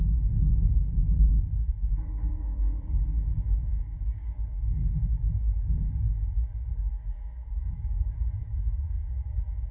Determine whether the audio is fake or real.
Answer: fake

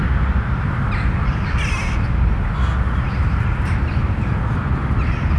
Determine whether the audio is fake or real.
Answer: real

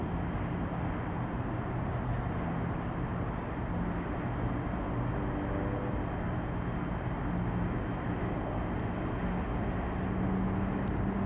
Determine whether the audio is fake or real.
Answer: real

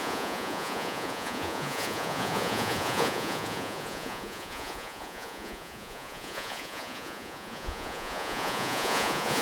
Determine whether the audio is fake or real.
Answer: fake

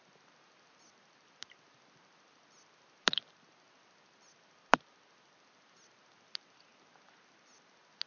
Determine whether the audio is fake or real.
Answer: real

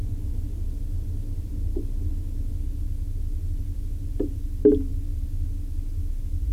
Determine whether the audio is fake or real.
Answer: real